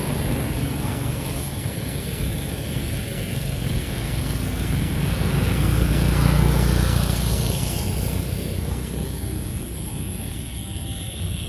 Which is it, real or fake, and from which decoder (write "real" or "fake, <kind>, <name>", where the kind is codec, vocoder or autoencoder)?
fake, codec, SNAC